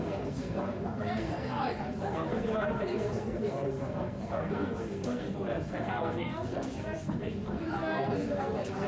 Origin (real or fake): fake